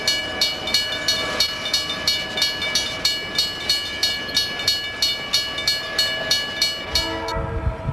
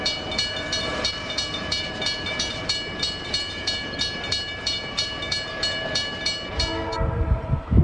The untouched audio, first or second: first